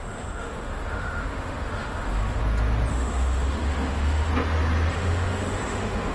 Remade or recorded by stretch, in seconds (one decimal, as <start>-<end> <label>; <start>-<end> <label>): 0.0-2.4 remade; 2.4-2.9 recorded; 2.9-4.3 remade; 4.3-4.9 recorded; 4.9-6.1 remade